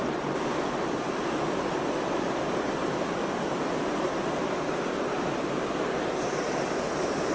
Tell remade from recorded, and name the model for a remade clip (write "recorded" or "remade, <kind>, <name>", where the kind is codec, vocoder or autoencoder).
recorded